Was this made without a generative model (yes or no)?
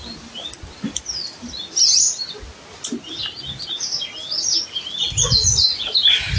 yes